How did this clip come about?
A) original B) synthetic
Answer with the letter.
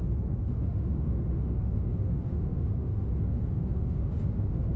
B